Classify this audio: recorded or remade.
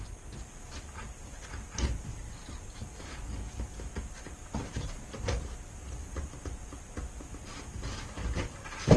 recorded